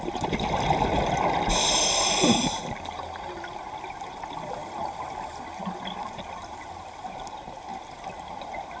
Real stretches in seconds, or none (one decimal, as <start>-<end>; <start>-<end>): 0.0-8.8